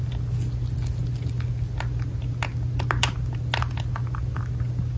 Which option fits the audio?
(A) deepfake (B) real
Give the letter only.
B